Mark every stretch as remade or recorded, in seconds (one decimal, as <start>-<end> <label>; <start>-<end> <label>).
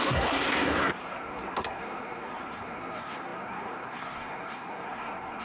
0.0-5.4 remade